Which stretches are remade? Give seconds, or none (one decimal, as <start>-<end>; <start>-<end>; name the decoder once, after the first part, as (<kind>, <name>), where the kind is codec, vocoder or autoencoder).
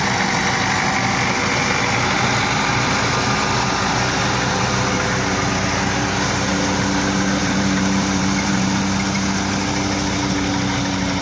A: 7.4-8.8 (vocoder, BigVGAN v2)